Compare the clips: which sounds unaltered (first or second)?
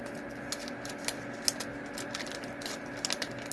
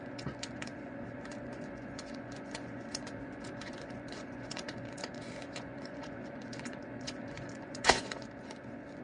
first